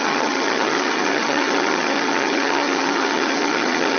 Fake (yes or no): yes